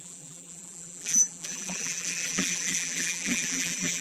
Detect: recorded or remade remade